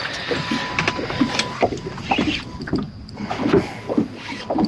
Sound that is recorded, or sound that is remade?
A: recorded